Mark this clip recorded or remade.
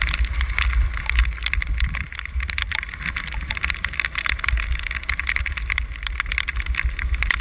recorded